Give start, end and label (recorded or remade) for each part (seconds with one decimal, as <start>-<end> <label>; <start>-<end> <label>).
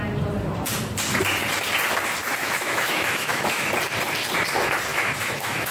0.0-2.4 recorded; 2.4-3.6 remade; 3.6-4.9 recorded; 4.9-5.7 remade